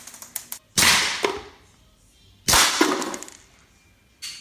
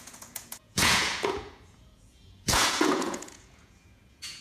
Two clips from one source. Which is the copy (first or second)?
second